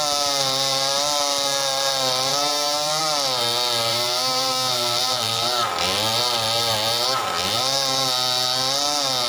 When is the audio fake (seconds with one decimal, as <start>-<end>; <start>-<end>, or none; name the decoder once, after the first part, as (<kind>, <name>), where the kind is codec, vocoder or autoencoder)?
2.3-3.0 (vocoder, BigVGAN v2); 3.9-5.6